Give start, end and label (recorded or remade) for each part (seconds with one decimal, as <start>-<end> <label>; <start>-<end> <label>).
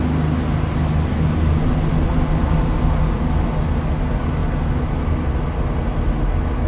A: 0.0-6.7 recorded